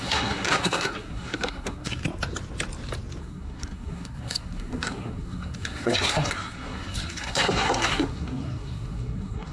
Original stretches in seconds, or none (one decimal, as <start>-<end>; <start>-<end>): 2.0-3.2